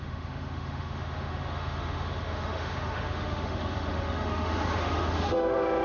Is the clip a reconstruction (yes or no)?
yes